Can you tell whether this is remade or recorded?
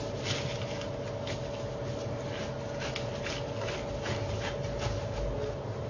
recorded